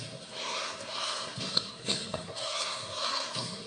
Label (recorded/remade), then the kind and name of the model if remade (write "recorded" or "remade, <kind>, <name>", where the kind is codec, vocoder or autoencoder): remade, codec, SNAC